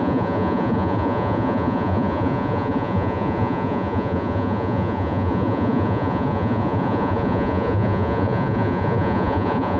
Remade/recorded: remade